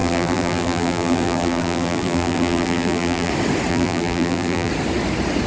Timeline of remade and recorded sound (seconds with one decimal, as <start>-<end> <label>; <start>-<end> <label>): 0.0-3.3 remade; 3.3-3.7 recorded; 3.7-4.7 remade; 4.7-5.5 recorded